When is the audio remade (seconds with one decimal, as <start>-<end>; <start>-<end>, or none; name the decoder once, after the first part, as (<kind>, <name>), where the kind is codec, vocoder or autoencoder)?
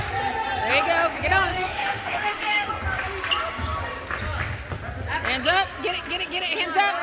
1.5-2.7 (autoencoder, DAC-VAE)